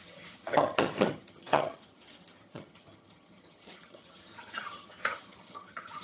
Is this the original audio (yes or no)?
no